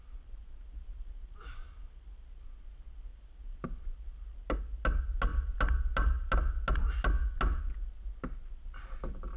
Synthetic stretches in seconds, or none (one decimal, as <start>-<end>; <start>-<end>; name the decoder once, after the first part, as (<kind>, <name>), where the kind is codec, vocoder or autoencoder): none